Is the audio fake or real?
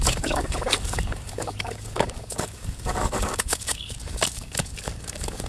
fake